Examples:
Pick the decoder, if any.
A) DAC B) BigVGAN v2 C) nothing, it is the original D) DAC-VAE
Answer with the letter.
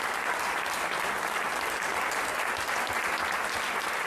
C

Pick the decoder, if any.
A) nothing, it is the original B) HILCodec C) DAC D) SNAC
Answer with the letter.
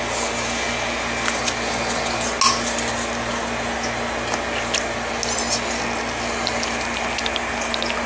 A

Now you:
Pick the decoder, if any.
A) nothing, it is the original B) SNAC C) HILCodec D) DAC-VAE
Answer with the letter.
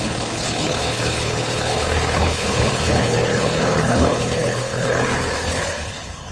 C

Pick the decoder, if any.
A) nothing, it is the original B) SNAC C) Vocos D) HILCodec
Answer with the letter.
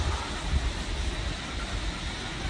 A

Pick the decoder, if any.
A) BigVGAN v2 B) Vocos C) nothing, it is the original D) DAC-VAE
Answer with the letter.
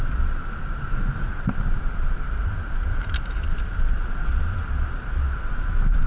C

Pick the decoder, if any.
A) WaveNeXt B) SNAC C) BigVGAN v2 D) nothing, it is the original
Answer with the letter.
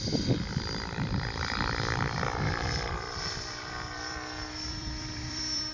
C